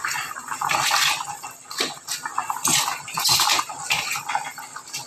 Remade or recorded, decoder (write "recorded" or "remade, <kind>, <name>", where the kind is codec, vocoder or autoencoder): recorded